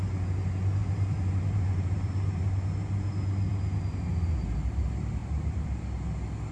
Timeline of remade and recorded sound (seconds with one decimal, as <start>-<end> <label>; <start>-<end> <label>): 0.0-0.8 recorded; 0.8-2.4 remade; 2.4-5.2 recorded; 5.2-6.0 remade; 6.0-6.5 recorded